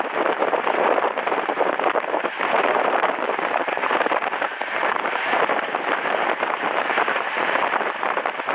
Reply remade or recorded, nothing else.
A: remade